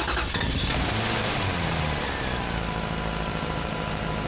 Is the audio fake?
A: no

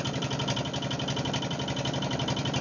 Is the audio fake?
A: no